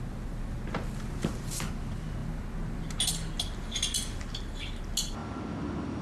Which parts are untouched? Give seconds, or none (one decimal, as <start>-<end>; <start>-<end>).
0.0-6.0